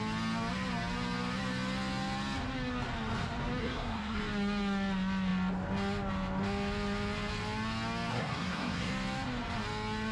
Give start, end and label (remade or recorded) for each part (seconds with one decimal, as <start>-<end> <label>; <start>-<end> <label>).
0.0-3.6 recorded; 3.6-4.2 remade; 4.2-8.1 recorded; 8.1-8.9 remade; 8.9-10.1 recorded